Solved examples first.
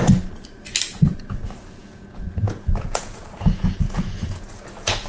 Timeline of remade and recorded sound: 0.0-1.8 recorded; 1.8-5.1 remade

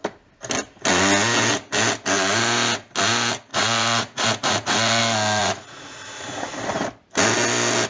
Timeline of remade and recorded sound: 0.0-3.5 recorded; 3.5-5.0 remade; 5.0-5.4 recorded; 5.4-6.6 remade; 6.6-7.9 recorded

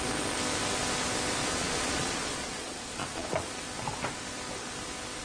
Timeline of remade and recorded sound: 0.0-1.4 recorded; 1.4-3.5 remade; 3.5-5.2 recorded

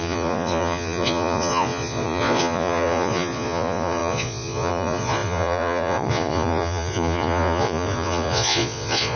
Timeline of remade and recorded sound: 0.0-9.2 remade

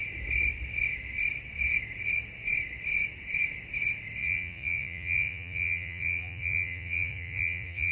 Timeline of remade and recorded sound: 0.0-4.2 recorded; 4.2-7.9 remade

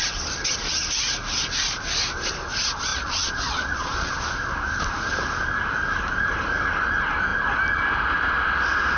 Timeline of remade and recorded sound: 0.0-2.9 recorded; 2.9-4.1 remade; 4.1-9.0 recorded

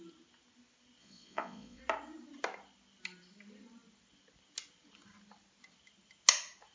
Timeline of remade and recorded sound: 0.0-1.0 recorded; 1.0-1.8 remade; 1.8-6.7 recorded

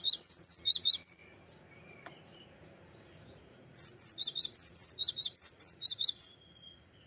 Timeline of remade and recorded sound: 0.0-7.1 remade